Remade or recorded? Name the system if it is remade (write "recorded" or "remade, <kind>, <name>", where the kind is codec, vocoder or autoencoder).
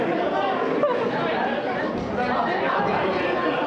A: recorded